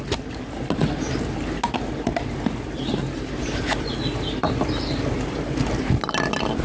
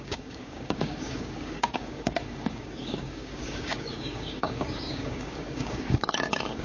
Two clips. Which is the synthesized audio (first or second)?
second